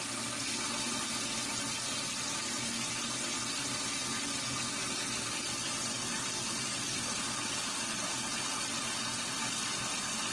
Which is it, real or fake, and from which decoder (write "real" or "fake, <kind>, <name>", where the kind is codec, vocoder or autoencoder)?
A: real